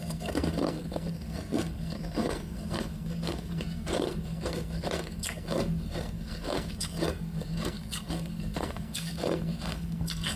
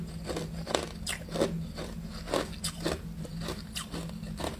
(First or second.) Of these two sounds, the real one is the second